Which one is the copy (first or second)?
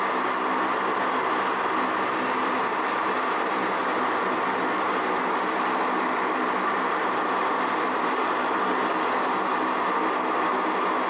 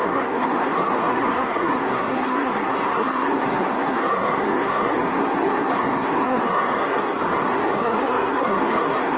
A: second